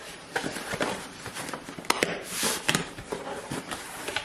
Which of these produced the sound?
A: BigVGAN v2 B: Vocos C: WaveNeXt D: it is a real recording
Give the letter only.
A